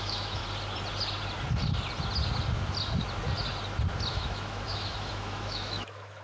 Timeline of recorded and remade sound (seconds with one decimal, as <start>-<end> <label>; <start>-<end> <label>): 0.0-0.4 remade; 0.4-4.1 recorded; 4.1-6.2 remade